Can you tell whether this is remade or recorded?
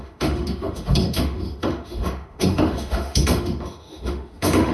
remade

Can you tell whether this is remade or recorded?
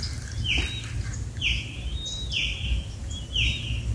recorded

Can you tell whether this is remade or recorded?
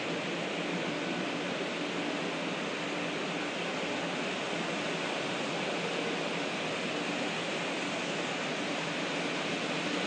recorded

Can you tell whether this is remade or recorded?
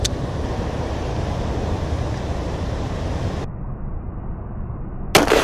recorded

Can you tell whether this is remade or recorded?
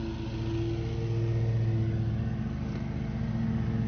recorded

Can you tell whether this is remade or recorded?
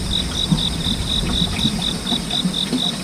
recorded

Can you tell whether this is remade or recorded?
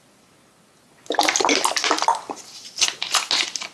recorded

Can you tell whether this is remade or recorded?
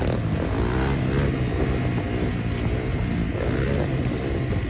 recorded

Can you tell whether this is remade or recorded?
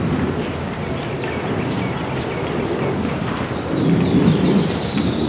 recorded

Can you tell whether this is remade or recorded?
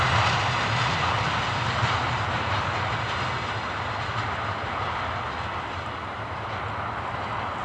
recorded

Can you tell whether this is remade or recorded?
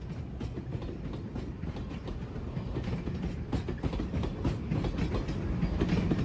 recorded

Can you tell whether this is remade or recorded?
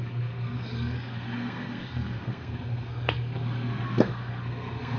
remade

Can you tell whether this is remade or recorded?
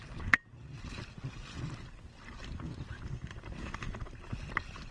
recorded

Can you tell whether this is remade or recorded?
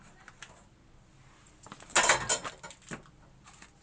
recorded